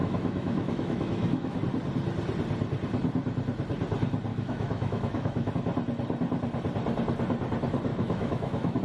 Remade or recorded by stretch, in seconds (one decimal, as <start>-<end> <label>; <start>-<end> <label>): 0.0-1.6 remade; 1.6-4.3 recorded; 4.3-5.5 remade; 5.5-7.9 recorded; 7.9-8.8 remade